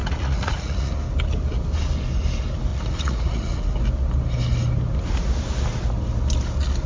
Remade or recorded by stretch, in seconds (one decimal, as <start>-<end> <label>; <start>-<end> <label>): 0.0-0.9 remade; 0.9-2.7 recorded; 2.7-3.6 remade; 3.6-6.9 recorded